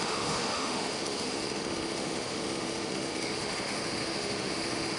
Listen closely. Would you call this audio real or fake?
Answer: fake